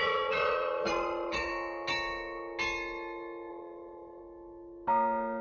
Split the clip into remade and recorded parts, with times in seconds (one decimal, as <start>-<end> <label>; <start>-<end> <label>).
0.0-1.5 remade; 1.5-3.5 recorded; 3.5-4.2 remade; 4.2-5.4 recorded